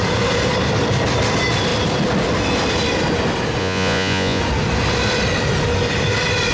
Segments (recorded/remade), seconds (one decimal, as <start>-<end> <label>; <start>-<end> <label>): 0.0-3.6 recorded; 3.6-4.4 remade; 4.4-6.5 recorded